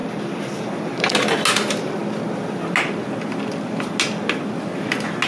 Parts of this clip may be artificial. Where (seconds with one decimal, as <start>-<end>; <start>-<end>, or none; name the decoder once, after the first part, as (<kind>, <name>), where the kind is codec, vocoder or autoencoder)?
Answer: none